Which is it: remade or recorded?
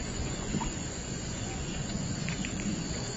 remade